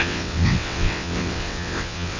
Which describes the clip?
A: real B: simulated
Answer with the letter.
B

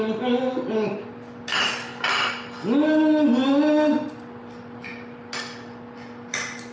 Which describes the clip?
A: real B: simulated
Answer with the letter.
A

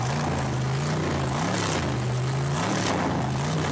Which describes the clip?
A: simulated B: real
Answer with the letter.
B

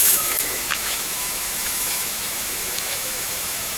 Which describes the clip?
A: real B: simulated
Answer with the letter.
B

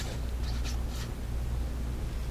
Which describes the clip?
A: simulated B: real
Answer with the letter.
B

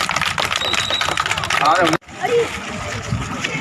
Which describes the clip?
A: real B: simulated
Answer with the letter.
B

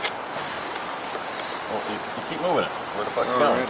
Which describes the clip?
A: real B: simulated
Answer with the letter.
A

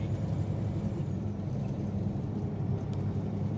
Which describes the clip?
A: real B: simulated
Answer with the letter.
B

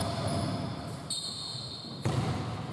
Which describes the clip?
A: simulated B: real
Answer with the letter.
B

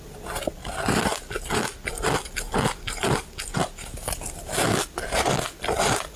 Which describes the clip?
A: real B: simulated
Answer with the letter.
A